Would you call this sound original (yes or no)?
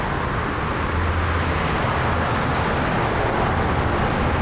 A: yes